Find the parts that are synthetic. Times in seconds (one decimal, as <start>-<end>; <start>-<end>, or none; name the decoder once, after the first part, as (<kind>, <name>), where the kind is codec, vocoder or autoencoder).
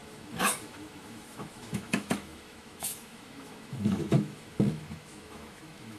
0.0-6.0 (autoencoder, DAC-VAE)